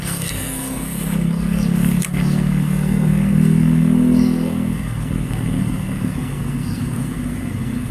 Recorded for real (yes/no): no